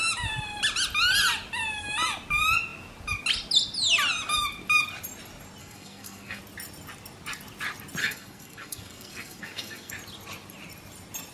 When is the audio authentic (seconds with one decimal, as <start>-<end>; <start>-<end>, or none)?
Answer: 0.0-5.6; 6.4-8.0; 9.9-11.3